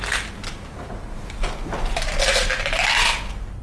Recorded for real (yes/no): yes